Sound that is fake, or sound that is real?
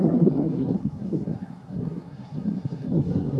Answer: fake